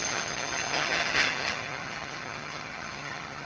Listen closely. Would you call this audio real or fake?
fake